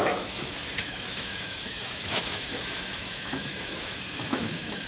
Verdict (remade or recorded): remade